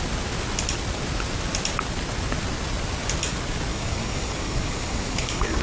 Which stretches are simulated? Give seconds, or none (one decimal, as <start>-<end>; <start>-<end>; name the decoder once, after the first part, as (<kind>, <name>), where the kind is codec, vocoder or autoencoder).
3.7-5.6 (codec, DAC)